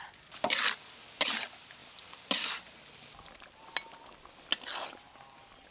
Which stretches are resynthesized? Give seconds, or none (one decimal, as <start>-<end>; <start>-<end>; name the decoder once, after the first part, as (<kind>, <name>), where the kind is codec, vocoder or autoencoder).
none